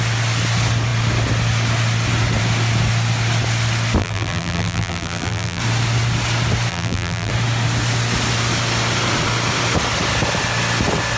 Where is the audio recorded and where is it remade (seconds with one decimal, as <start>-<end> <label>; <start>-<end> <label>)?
0.0-4.0 recorded; 4.0-5.6 remade; 5.6-6.7 recorded; 6.7-7.3 remade; 7.3-11.2 recorded